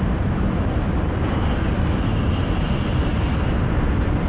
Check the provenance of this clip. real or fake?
real